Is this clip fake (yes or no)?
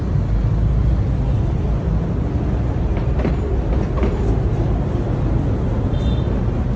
no